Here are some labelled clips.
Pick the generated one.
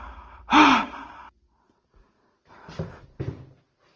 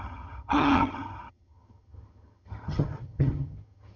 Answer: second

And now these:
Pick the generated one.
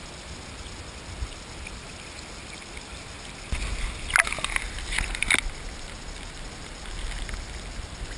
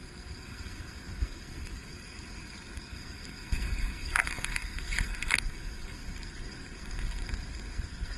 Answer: second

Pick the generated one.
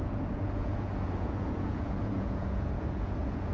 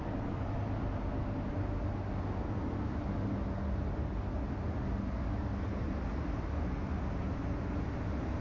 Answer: first